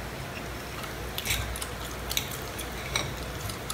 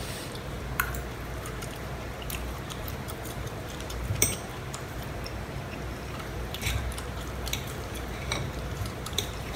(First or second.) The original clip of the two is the first